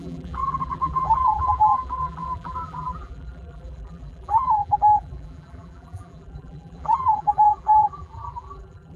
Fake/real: fake